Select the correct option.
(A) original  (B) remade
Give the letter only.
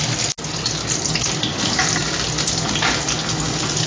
A